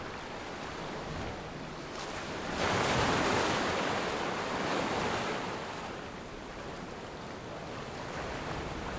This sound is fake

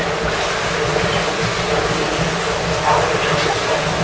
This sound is real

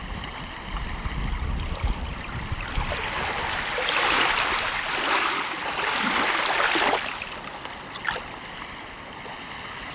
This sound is real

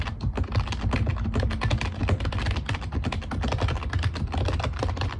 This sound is real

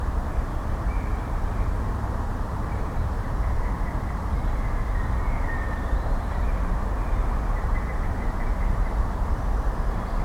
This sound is fake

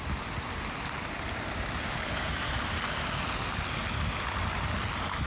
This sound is real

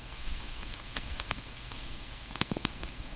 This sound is fake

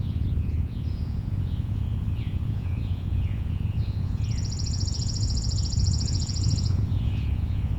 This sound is fake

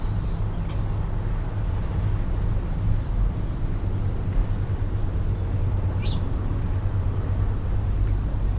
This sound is real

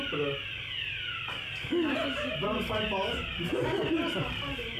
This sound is real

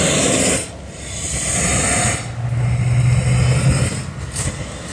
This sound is real